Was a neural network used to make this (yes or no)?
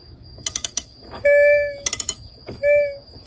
yes